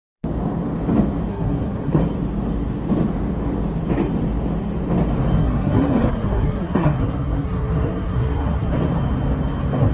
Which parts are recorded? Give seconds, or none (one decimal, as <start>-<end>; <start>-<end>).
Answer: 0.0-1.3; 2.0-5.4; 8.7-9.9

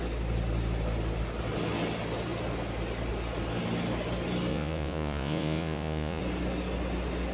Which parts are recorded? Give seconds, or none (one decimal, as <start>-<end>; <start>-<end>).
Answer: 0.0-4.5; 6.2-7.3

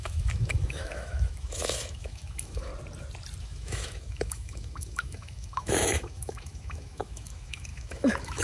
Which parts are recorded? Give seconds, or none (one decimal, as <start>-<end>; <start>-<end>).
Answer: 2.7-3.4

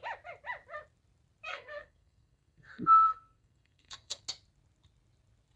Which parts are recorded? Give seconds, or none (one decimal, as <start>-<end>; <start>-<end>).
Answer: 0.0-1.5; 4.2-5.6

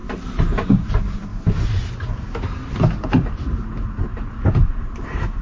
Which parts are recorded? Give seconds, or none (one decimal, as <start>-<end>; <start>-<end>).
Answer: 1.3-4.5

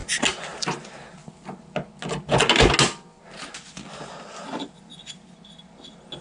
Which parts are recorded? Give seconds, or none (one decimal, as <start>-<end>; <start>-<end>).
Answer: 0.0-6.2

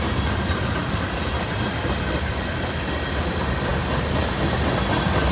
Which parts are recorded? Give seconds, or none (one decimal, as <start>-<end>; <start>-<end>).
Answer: 0.0-5.3

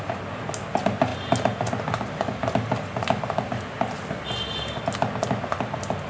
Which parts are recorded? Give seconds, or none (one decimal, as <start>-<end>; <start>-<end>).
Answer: 0.0-6.1